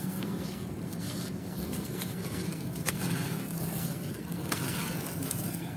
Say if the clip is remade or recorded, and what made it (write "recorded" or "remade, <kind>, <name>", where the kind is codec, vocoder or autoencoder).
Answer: remade, codec, SNAC